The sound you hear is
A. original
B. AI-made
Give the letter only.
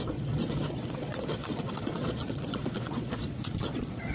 B